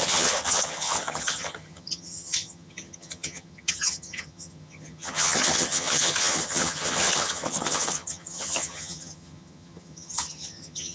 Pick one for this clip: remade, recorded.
remade